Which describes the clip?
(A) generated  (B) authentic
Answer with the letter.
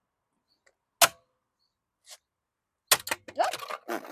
B